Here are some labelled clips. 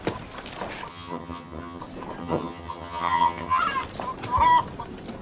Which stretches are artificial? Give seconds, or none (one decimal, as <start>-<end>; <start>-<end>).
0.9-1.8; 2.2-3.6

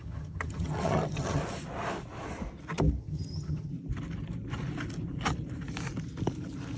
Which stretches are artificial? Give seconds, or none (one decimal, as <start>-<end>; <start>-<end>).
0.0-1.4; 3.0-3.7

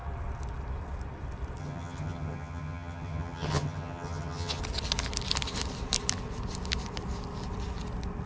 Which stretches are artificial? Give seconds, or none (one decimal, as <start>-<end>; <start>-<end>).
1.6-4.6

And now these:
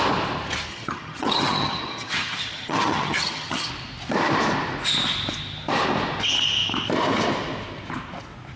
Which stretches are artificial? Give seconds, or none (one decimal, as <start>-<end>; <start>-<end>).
0.7-3.7

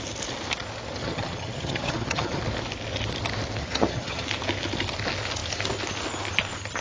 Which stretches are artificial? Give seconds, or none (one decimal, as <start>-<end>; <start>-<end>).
1.0-2.4; 3.6-4.2

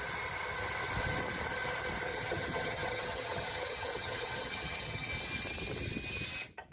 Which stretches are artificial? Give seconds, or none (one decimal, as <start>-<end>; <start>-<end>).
2.1-5.1

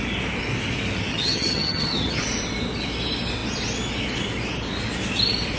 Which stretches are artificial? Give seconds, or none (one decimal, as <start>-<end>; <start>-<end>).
1.1-2.2

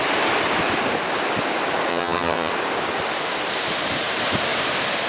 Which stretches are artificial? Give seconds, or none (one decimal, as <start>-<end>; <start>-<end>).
1.9-2.5